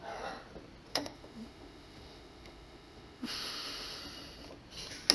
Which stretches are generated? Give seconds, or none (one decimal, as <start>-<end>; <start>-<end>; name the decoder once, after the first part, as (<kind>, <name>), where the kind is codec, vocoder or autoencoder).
0.9-4.0 (autoencoder, DAC-VAE)